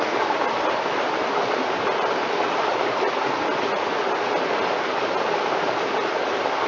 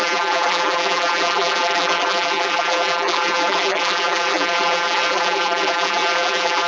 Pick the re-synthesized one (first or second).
second